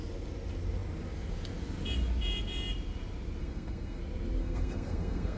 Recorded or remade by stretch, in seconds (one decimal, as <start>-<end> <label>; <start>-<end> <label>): 0.0-3.4 recorded; 3.4-4.0 remade; 4.0-4.4 recorded; 4.4-5.4 remade